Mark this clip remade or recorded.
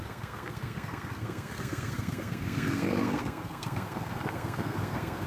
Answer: remade